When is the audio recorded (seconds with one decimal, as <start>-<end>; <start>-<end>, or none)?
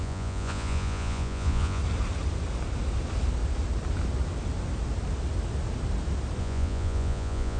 1.8-6.4